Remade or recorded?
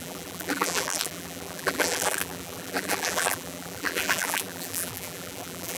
remade